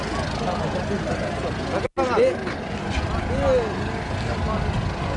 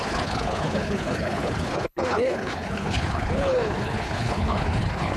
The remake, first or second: second